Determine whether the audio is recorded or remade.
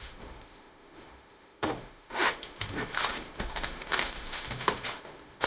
remade